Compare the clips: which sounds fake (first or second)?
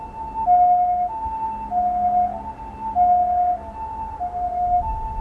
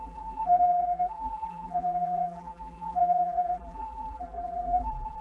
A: second